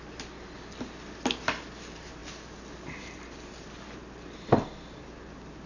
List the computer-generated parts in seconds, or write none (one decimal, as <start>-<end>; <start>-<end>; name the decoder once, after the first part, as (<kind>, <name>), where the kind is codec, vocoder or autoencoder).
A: none